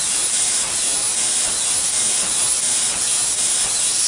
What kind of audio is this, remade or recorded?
recorded